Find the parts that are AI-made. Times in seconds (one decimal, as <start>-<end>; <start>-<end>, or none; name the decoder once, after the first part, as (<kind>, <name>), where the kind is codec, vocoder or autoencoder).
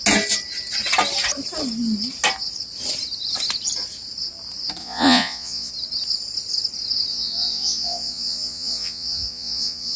4.8-5.7 (vocoder, Vocos); 7.1-10.0